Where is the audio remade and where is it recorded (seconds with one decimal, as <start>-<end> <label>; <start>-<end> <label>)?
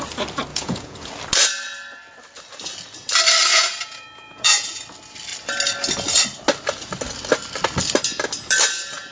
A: 0.0-0.5 recorded; 0.5-1.1 remade; 1.1-3.5 recorded; 3.5-4.8 remade; 4.8-9.1 recorded